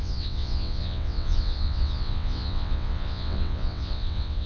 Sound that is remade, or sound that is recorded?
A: remade